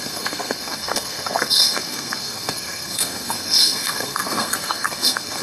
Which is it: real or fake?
fake